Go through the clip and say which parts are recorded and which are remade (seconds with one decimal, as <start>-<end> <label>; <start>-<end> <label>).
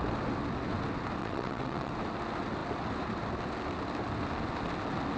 0.0-1.2 recorded; 1.2-1.9 remade; 1.9-5.2 recorded